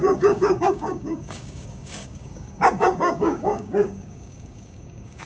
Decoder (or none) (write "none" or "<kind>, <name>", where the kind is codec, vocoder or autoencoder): codec, DAC